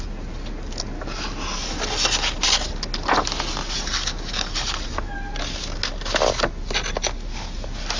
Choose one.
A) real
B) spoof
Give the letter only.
A